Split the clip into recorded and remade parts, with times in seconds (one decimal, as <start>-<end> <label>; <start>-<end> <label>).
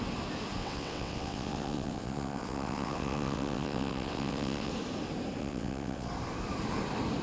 0.0-0.6 recorded; 0.6-4.7 remade; 4.7-5.4 recorded; 5.4-6.1 remade; 6.1-7.2 recorded